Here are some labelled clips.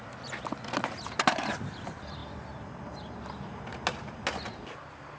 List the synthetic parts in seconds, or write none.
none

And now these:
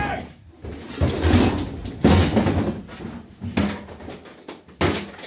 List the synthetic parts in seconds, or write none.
none

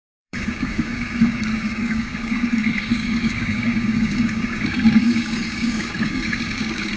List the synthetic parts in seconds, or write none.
0.0-7.0 (codec, DAC)

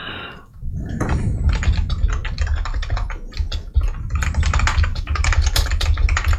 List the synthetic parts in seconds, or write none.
0.0-0.9 (codec, DAC); 4.9-5.7

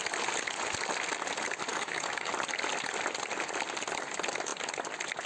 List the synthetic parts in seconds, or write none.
1.7-2.3 (codec, DAC)

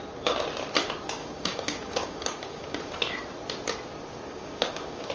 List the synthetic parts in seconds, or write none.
1.2-2.9 (codec, DAC); 4.3-5.1